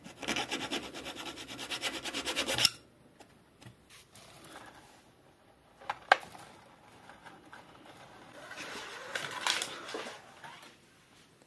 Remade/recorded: recorded